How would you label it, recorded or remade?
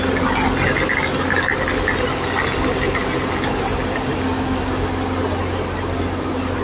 recorded